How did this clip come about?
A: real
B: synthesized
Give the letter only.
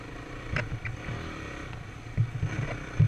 A